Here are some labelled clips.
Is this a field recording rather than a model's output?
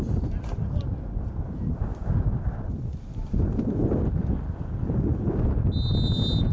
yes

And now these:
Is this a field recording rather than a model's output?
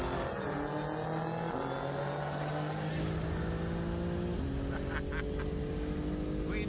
yes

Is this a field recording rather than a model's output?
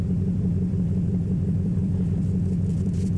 no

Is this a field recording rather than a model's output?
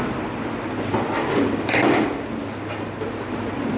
yes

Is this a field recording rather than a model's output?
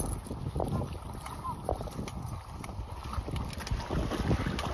yes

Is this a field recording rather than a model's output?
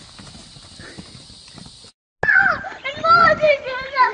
yes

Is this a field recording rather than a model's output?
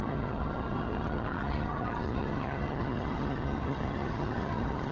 no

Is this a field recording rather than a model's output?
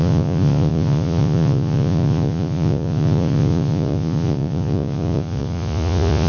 no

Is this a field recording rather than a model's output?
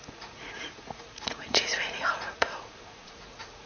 no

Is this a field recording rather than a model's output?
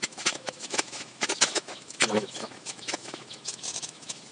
no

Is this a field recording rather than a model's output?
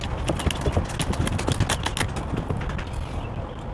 yes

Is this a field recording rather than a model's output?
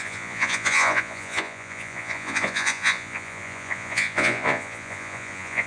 no